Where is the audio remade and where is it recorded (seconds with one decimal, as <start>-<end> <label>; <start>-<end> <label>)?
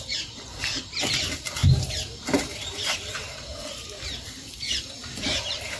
0.0-5.8 remade